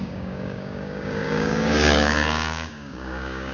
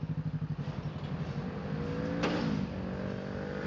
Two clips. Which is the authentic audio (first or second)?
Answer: second